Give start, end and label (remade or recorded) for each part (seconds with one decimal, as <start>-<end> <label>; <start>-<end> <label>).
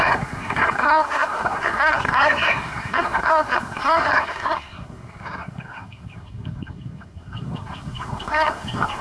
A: 0.0-9.0 remade